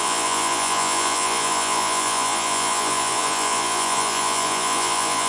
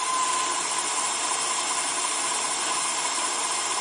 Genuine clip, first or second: second